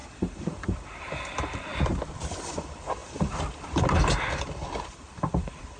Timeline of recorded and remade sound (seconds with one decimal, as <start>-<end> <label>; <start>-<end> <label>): 0.0-1.7 remade; 1.7-2.3 recorded; 2.3-5.8 remade